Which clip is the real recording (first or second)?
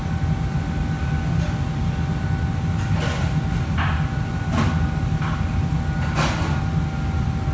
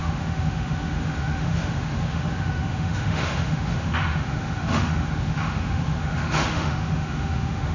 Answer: first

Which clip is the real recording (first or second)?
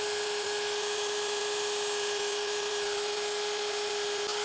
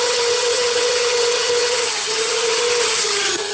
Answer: first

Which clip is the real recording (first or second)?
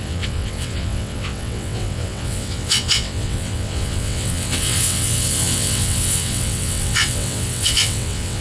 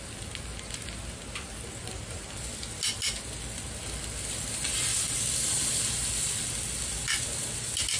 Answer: second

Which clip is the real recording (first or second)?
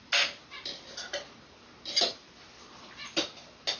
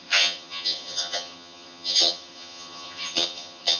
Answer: first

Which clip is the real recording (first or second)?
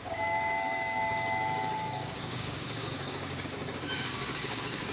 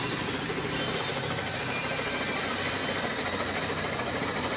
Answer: second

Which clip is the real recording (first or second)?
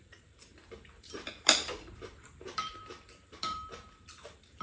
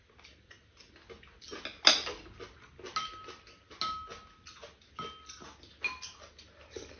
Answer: second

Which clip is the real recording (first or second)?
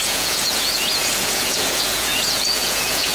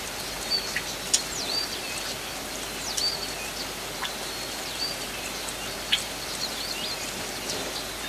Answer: second